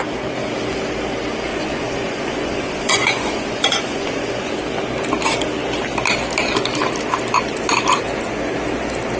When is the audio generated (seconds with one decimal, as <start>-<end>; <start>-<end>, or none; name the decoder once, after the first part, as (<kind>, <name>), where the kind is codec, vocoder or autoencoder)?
1.5-4.5 (vocoder, Vocos)